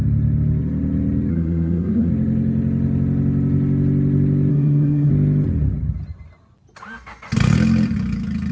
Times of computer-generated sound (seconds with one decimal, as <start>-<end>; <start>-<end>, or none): 1.3-2.1; 4.5-5.1